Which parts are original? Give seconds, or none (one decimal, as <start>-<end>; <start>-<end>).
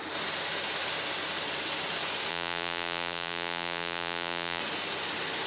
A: 0.0-2.3; 4.6-5.5